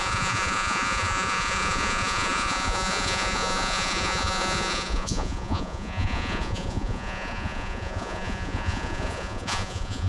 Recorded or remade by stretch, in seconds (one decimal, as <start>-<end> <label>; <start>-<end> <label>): 0.0-10.1 remade